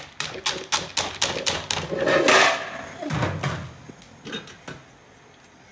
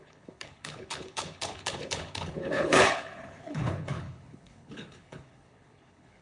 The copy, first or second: second